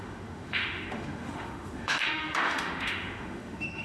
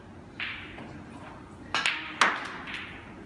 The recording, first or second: second